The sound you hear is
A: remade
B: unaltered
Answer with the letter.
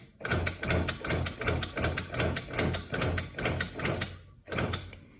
B